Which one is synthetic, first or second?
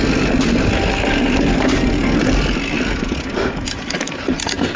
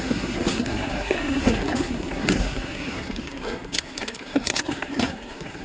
second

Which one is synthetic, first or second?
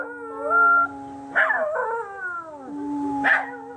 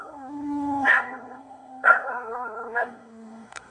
second